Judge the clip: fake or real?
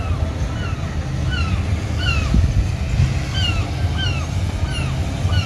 real